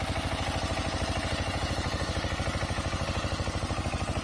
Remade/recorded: recorded